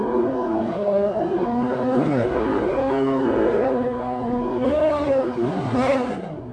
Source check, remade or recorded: remade